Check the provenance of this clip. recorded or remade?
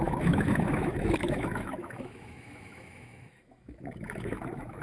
remade